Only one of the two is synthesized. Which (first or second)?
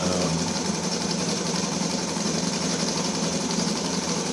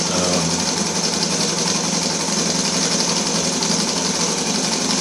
first